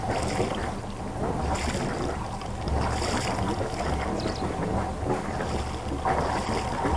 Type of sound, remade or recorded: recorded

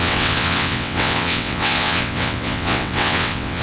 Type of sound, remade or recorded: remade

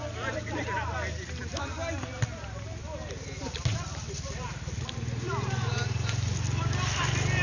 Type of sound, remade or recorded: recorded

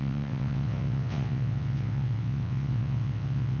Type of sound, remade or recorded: remade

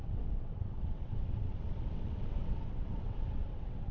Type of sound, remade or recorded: remade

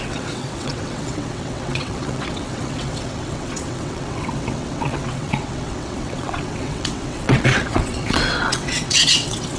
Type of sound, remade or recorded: remade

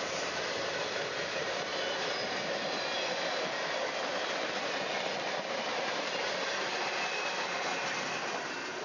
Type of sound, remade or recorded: recorded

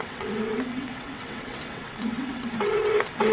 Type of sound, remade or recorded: remade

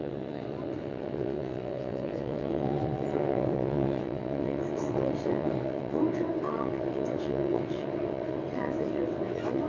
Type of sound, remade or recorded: remade